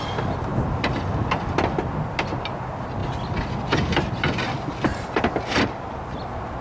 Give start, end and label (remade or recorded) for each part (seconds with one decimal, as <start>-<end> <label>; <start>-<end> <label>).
0.0-6.6 recorded

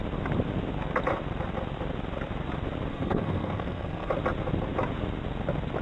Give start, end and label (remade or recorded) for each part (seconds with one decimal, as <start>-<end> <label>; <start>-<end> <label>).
0.0-2.9 recorded; 2.9-4.1 remade; 4.1-5.8 recorded

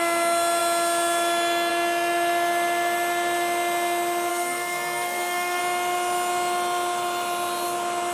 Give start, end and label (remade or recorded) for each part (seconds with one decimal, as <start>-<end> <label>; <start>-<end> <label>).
0.0-4.3 recorded; 4.3-5.6 remade; 5.6-8.1 recorded

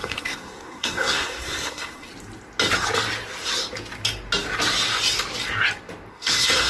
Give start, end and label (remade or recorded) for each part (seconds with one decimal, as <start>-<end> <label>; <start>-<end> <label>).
0.0-2.1 remade; 2.1-6.1 recorded; 6.1-6.7 remade